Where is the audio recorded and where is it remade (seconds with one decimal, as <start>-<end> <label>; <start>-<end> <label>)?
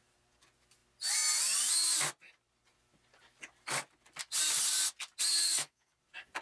0.0-5.4 recorded; 5.4-6.0 remade; 6.0-6.4 recorded